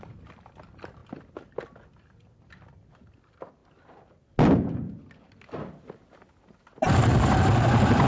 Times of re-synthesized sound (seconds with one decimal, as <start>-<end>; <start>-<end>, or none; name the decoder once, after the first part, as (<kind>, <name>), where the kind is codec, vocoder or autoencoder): 0.0-1.0 (vocoder, BigVGAN v2); 2.0-8.1